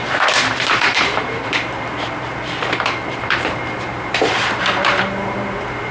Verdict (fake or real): fake